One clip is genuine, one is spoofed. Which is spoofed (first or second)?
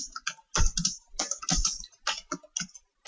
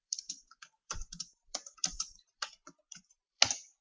second